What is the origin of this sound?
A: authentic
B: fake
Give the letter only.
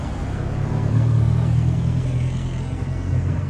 B